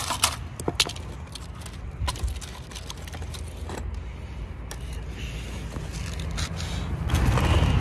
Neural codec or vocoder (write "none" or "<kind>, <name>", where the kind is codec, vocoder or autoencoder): none